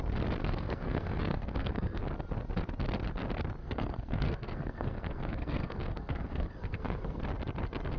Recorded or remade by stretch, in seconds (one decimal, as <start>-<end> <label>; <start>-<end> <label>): 0.0-0.4 recorded; 0.4-2.0 remade; 2.0-3.6 recorded; 3.6-7.2 remade; 7.2-8.0 recorded